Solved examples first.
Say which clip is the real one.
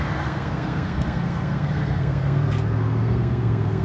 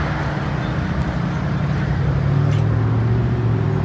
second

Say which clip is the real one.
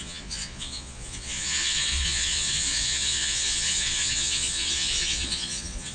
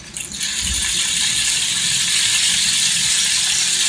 second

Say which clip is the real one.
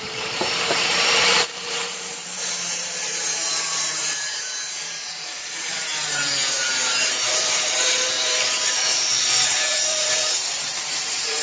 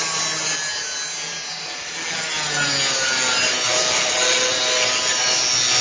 second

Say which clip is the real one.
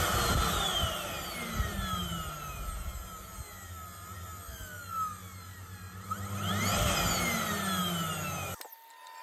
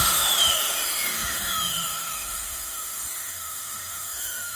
first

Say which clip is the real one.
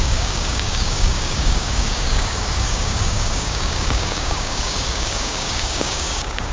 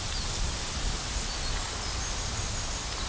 second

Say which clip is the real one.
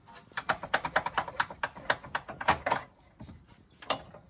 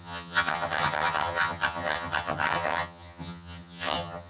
first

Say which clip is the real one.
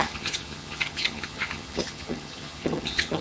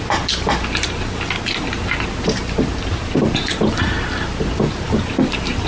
second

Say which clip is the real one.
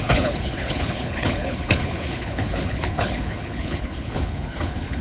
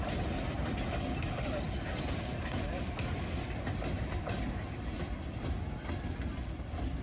second